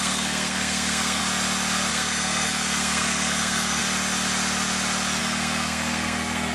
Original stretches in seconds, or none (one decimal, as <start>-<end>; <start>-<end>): 1.2-1.9; 3.8-5.2